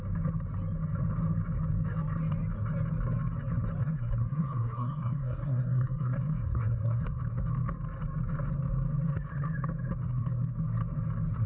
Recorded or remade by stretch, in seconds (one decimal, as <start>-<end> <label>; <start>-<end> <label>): 0.0-3.8 recorded; 3.8-7.2 remade; 7.2-11.5 recorded